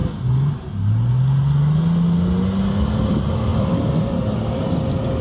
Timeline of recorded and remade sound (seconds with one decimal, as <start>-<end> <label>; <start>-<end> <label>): 0.0-3.5 recorded; 3.5-4.6 remade; 4.6-5.2 recorded